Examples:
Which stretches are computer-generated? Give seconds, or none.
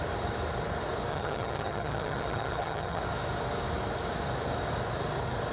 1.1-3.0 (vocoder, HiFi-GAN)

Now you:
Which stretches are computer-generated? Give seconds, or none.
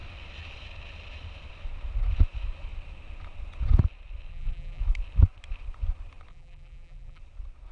4.3-4.8 (vocoder, BigVGAN v2); 6.3-7.2